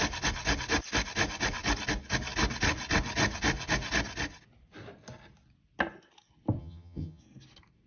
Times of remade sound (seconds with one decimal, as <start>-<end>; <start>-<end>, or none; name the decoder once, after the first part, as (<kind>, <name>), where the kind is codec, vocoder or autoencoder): 6.6-7.2 (vocoder, HiFi-GAN)